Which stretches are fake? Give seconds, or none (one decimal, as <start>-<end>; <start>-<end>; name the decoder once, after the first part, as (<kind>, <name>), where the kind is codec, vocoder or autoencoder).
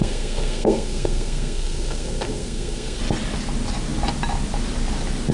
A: 0.0-3.0 (codec, SNAC)